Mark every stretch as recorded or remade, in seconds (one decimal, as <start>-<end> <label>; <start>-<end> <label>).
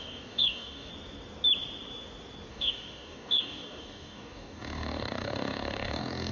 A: 0.0-0.9 remade; 0.9-2.5 recorded; 2.5-6.3 remade